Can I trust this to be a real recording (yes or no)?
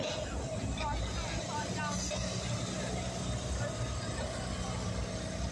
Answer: yes